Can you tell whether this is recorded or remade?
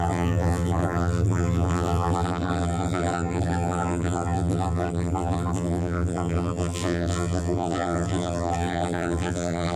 remade